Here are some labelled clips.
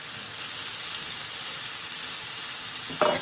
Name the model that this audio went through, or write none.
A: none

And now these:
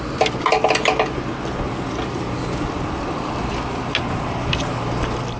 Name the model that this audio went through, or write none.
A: none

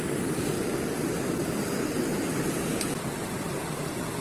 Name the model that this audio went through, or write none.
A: none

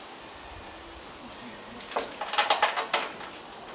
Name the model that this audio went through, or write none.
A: none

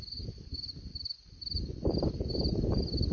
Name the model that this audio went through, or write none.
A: none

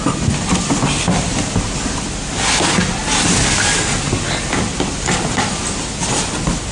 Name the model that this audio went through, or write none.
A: none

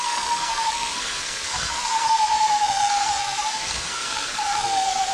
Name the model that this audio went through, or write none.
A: codec, SNAC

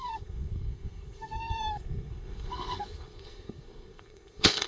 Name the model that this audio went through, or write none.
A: codec, SNAC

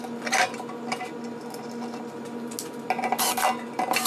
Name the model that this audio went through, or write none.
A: none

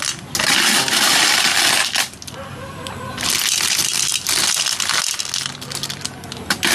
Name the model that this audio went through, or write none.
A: none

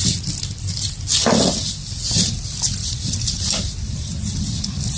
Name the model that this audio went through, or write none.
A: none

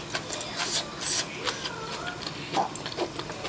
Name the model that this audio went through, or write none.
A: none